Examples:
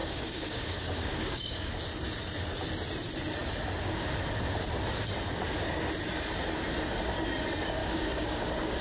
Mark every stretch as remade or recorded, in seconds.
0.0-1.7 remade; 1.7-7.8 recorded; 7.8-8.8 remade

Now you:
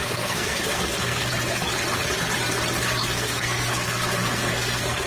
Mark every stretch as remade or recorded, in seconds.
0.0-1.3 remade; 1.3-3.0 recorded; 3.0-5.1 remade